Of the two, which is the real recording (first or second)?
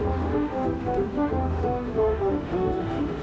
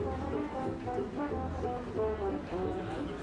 second